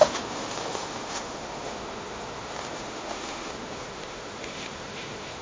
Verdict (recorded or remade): remade